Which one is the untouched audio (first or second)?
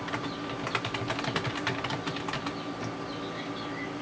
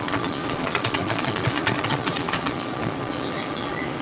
first